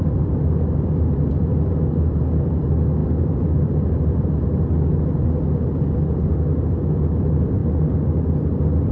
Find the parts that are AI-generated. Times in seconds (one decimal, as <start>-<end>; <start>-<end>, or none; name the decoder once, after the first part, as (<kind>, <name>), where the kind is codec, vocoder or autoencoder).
0.0-7.6 (vocoder, BigVGAN v2); 8.3-8.9